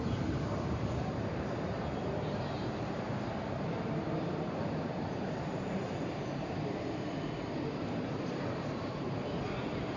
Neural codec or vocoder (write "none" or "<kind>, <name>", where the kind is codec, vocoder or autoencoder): vocoder, BigVGAN v2